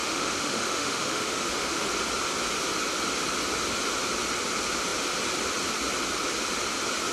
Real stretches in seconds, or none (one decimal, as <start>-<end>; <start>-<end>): 1.9-7.1